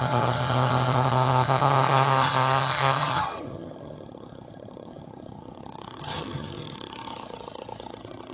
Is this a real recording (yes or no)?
no